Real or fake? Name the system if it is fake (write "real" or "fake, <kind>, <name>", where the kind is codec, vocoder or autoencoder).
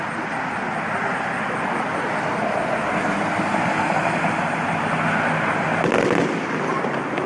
real